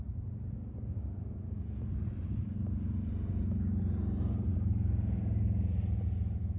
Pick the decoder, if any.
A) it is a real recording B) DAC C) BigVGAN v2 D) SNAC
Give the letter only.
A